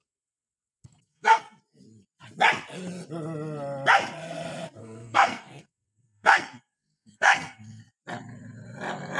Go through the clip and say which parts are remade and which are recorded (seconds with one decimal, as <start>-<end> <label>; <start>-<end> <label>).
0.0-1.6 remade; 1.6-4.8 recorded; 4.8-7.8 remade; 7.8-9.2 recorded

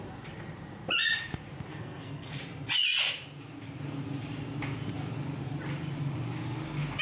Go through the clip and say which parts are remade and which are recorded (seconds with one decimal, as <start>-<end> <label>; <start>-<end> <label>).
0.0-1.7 recorded; 1.7-2.4 remade; 2.4-7.0 recorded

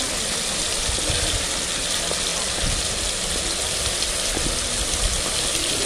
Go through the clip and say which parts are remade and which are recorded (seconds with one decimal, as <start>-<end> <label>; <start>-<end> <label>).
0.0-5.9 recorded

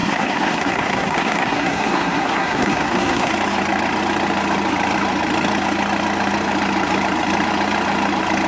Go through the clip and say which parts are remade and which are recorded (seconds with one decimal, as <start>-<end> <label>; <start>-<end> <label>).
0.0-3.3 remade; 3.3-8.5 recorded

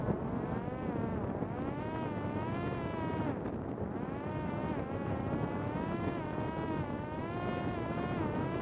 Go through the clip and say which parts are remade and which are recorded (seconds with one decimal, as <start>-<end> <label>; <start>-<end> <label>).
0.0-8.6 recorded